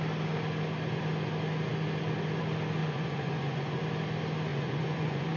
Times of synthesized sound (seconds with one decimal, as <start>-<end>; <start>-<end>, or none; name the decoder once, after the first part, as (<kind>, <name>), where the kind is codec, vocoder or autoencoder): 2.8-3.8 (vocoder, Vocos); 4.5-5.4